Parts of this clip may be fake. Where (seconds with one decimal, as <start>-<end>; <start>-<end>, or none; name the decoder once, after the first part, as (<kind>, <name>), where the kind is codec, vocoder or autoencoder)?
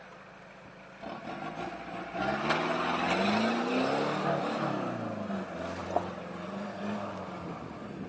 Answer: 5.8-6.8 (vocoder, BigVGAN v2)